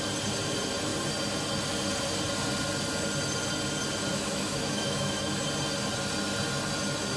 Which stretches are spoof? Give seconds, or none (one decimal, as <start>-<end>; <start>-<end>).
4.1-5.3